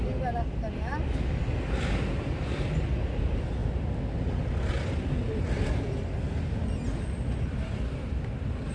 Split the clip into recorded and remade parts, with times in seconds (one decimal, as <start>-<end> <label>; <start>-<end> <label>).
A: 0.0-8.7 recorded